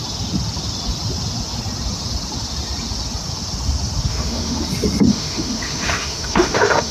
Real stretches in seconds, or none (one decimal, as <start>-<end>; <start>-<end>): 0.0-4.1; 4.6-5.1